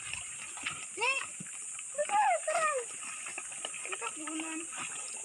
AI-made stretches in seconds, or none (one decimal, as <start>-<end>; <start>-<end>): none